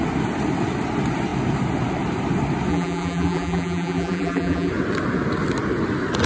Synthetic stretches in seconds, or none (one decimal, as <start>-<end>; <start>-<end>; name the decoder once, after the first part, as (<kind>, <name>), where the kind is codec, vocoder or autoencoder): 2.7-4.7 (vocoder, BigVGAN v2)